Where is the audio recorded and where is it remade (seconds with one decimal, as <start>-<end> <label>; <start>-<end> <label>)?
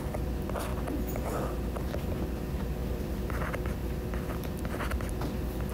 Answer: 0.0-2.8 recorded; 2.8-3.4 remade; 3.4-5.7 recorded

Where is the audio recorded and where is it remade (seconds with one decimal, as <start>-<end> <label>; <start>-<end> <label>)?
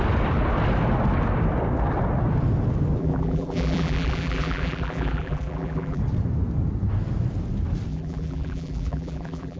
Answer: 0.0-3.0 recorded; 3.0-6.0 remade; 6.0-7.9 recorded; 7.9-9.6 remade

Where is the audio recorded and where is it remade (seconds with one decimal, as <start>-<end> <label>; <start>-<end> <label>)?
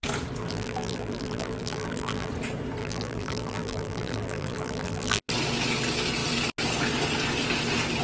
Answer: 0.0-0.4 recorded; 0.4-2.3 remade; 2.3-2.8 recorded; 2.8-5.3 remade; 5.3-8.0 recorded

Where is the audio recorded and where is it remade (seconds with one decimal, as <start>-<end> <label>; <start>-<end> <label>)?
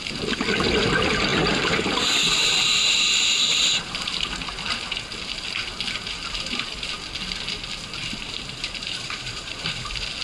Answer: 0.0-1.3 recorded; 1.3-4.3 remade; 4.3-8.0 recorded; 8.0-10.2 remade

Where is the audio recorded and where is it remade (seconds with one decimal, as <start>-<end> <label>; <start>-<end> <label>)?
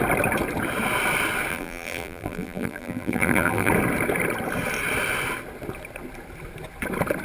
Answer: 0.0-1.5 recorded; 1.5-3.7 remade; 3.7-7.2 recorded